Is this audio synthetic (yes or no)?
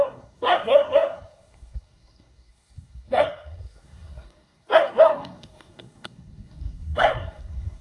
yes